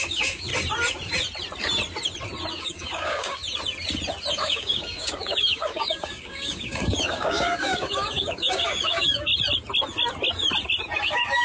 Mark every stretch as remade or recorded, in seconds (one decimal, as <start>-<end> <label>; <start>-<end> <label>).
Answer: 0.0-0.5 remade; 0.5-2.5 recorded; 2.5-3.4 remade; 3.4-4.3 recorded; 4.3-9.3 remade; 9.3-11.0 recorded; 11.0-11.4 remade